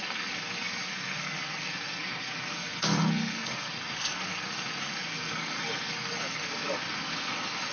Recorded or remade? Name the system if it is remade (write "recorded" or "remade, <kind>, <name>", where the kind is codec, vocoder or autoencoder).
remade, codec, SNAC